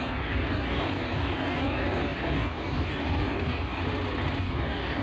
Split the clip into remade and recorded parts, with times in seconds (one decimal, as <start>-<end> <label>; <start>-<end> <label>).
0.0-3.8 remade; 3.8-4.4 recorded; 4.4-5.0 remade